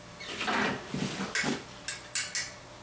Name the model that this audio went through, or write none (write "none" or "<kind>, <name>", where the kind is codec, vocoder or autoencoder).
none